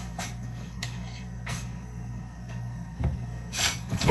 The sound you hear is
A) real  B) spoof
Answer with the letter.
B